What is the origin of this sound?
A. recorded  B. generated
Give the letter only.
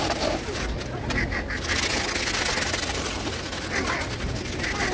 A